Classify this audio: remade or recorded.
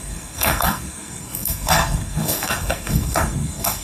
remade